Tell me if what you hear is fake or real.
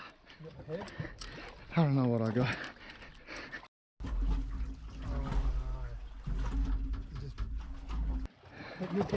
real